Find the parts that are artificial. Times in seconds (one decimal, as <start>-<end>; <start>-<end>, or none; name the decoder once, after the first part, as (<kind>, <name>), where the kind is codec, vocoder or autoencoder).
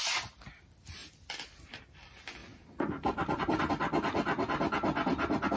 1.0-1.9 (vocoder, BigVGAN v2); 2.4-3.7